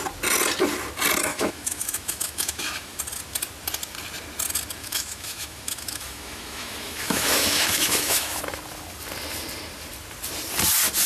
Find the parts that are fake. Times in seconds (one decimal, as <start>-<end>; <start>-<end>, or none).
1.3-3.0; 4.8-8.4